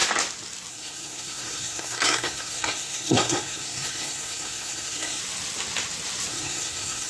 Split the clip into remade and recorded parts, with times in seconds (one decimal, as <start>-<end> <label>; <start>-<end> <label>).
0.0-0.7 recorded; 0.7-5.2 remade; 5.2-6.3 recorded; 6.3-7.1 remade